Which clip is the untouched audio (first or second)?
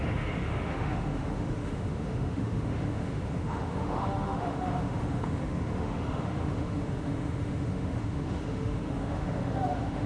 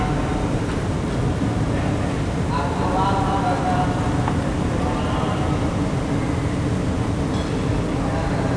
second